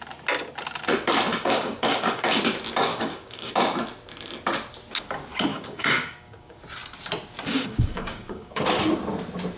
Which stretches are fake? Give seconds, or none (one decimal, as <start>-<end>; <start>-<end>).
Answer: 1.3-2.4; 2.9-3.5; 5.5-6.6; 7.5-8.7